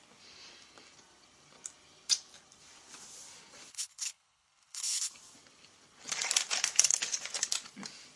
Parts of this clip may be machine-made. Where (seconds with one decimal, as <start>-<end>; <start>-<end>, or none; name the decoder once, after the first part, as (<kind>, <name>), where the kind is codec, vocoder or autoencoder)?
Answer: 3.7-5.1 (codec, HILCodec)